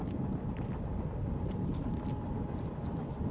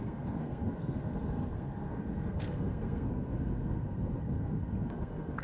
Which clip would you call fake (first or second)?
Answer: second